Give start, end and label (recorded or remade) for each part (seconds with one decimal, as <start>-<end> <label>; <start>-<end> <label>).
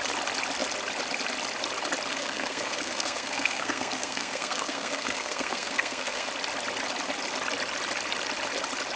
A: 0.0-2.1 recorded; 2.1-6.3 remade; 6.3-9.0 recorded